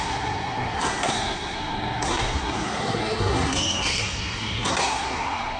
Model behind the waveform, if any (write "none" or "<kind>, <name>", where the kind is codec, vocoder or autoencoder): codec, SNAC